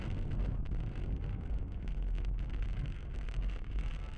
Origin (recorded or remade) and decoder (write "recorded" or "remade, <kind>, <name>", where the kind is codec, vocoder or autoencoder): remade, codec, SNAC